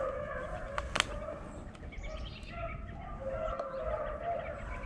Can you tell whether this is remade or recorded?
recorded